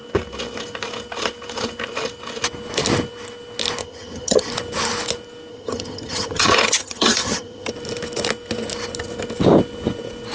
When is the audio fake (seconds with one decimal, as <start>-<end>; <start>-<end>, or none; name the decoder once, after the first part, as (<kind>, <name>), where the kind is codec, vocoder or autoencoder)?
3.8-4.5 (vocoder, HiFi-GAN); 5.5-7.7